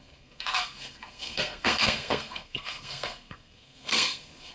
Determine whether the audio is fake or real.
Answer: fake